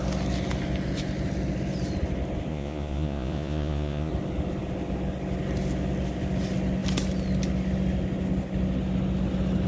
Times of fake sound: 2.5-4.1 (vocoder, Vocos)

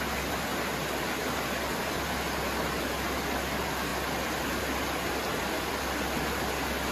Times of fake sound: none

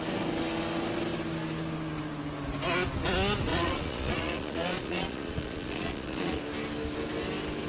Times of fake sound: 3.5-6.4 (vocoder, Vocos)